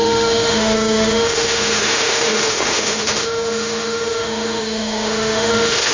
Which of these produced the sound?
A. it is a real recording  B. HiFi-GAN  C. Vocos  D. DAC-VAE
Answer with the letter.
D